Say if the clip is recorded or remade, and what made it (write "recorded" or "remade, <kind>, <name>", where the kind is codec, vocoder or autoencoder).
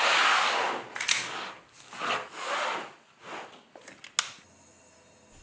recorded